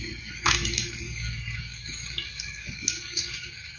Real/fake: fake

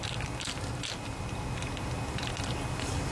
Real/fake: real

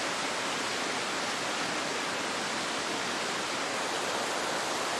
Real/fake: real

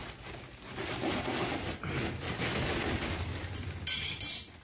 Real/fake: real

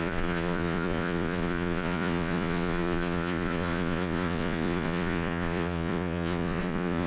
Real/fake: fake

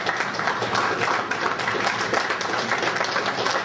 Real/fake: real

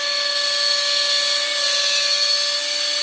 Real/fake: real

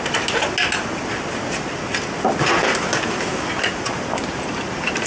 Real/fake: real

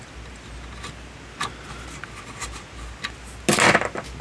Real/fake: real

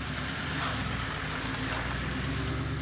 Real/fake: real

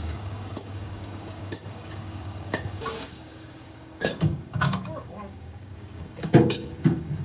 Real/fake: fake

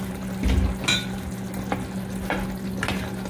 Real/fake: real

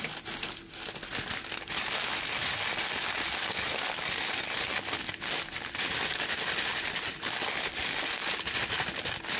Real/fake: real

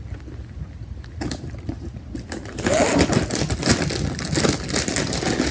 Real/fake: real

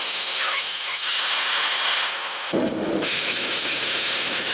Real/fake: fake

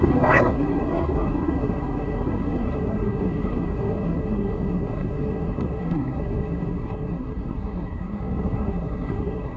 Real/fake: fake